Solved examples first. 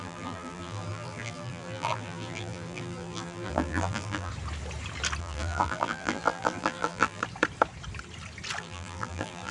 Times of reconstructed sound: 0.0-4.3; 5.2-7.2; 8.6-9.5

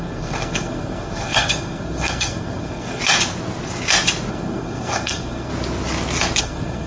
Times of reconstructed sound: 0.0-3.0; 4.3-5.5; 6.4-6.9